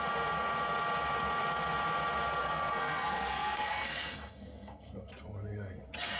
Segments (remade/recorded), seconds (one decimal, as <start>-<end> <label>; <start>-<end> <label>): 0.0-2.4 recorded; 2.4-5.1 remade; 5.1-6.2 recorded